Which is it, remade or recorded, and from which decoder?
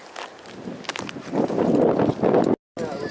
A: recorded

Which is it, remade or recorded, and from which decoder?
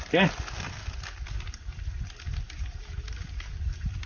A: recorded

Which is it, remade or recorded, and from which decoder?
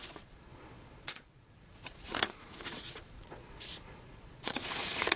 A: remade, vocoder, Vocos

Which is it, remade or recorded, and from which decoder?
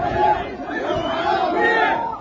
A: remade, vocoder, Vocos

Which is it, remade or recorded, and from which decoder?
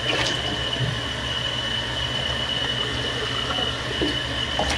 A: recorded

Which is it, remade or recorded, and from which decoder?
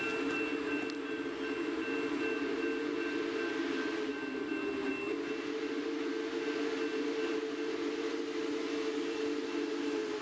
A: recorded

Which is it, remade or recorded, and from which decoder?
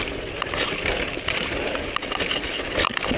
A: recorded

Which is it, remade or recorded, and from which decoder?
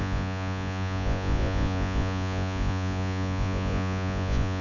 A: remade, vocoder, Vocos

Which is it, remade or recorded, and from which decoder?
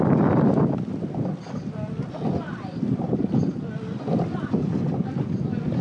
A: recorded